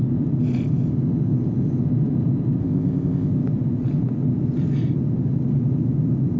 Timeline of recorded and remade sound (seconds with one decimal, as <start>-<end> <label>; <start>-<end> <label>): 0.0-2.6 recorded; 2.6-3.3 remade; 3.3-6.4 recorded